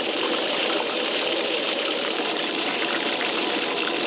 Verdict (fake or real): fake